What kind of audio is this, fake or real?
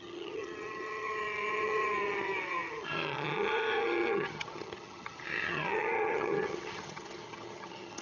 fake